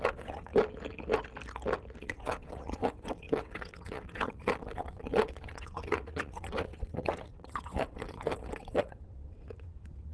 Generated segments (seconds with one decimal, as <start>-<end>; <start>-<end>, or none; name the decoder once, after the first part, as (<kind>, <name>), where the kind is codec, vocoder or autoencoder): 0.0-0.5 (vocoder, WaveNeXt); 2.0-10.1